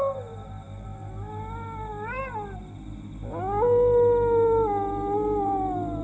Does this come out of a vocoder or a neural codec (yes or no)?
no